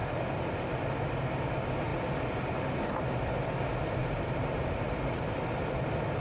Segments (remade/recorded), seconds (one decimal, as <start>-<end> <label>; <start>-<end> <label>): 0.0-4.0 recorded; 4.0-4.8 remade; 4.8-6.2 recorded